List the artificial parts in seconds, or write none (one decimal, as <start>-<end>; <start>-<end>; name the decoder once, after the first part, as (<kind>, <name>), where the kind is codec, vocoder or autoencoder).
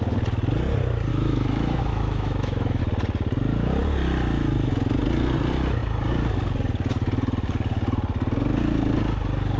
1.1-2.8 (autoencoder, DAC-VAE)